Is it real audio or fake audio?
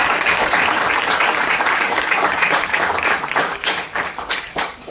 fake